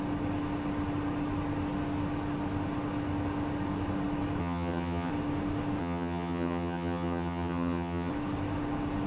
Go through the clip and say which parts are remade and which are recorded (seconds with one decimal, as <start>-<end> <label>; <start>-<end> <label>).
0.0-4.4 recorded; 4.4-5.1 remade; 5.1-5.8 recorded; 5.8-8.1 remade; 8.1-9.1 recorded